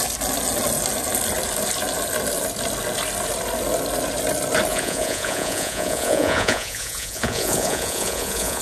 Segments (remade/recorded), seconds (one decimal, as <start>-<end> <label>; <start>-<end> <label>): 0.0-4.7 recorded; 4.7-8.6 remade

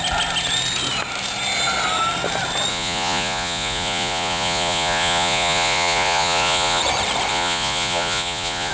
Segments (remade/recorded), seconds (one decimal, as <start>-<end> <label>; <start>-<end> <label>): 0.0-2.7 recorded; 2.7-6.8 remade; 6.8-7.3 recorded; 7.3-8.7 remade

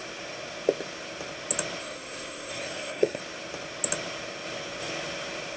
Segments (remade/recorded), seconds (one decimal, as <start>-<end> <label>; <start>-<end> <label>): 0.0-1.8 recorded; 1.8-3.2 remade; 3.2-5.6 recorded

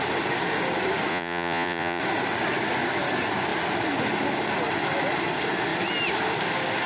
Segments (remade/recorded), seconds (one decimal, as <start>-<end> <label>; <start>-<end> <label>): 0.0-1.1 recorded; 1.1-2.0 remade; 2.0-6.9 recorded

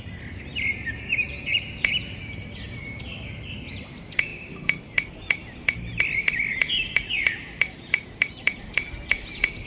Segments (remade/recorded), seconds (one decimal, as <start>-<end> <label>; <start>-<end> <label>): 0.0-4.3 recorded; 4.3-4.8 remade; 4.8-5.4 recorded; 5.4-5.9 remade; 5.9-6.5 recorded; 6.5-8.9 remade; 8.9-9.7 recorded

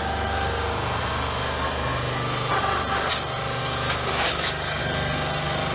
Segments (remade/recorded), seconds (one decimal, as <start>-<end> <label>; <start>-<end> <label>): 0.0-3.6 recorded; 3.6-4.8 remade; 4.8-5.7 recorded

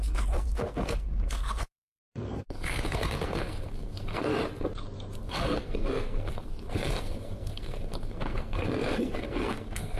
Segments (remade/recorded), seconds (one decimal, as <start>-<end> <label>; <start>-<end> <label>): 0.0-4.3 remade; 4.3-5.2 recorded; 5.2-10.0 remade

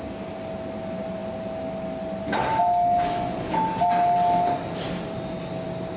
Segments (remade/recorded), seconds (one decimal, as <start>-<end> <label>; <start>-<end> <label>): 0.0-6.0 recorded